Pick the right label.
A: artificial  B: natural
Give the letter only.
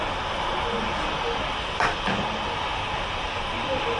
B